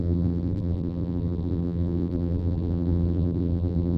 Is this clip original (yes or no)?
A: no